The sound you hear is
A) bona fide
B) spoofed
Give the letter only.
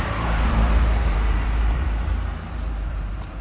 B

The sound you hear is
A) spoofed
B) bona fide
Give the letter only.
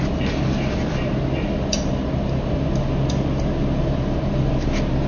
B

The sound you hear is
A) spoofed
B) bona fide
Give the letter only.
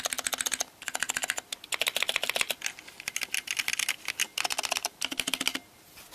B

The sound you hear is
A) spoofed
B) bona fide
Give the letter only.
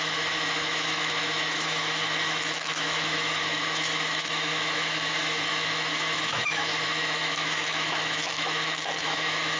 A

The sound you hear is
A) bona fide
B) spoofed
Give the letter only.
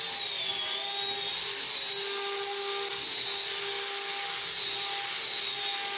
A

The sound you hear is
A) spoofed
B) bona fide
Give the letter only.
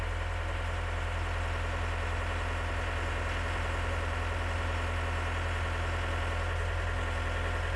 B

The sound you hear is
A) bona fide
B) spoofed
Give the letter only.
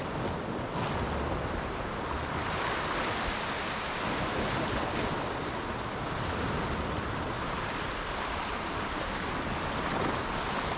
A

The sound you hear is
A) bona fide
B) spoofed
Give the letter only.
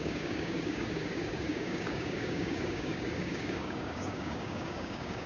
B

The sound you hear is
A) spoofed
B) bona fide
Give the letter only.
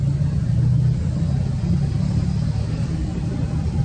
B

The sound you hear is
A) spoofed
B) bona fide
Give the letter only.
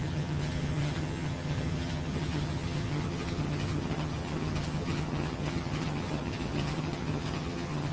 A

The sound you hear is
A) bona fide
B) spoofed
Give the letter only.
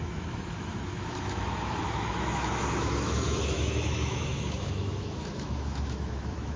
B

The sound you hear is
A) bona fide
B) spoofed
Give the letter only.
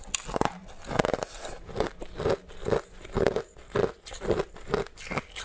A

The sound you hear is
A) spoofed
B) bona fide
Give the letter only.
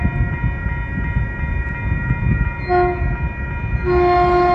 B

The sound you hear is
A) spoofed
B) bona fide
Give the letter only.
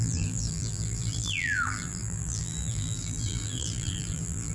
A